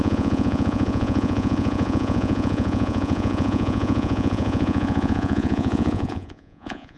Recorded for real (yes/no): no